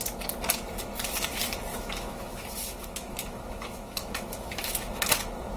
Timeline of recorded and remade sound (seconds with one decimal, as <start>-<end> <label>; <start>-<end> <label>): 0.0-1.7 recorded; 1.7-5.1 remade; 5.1-5.6 recorded